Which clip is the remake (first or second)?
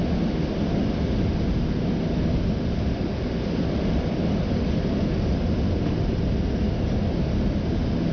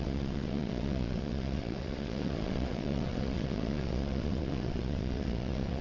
second